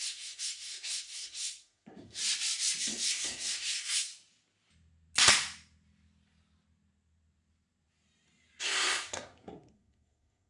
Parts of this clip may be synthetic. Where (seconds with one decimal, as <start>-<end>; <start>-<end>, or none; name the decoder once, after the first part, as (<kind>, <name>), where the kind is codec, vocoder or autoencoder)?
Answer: 0.0-2.2 (codec, SNAC); 2.8-4.1; 8.6-10.5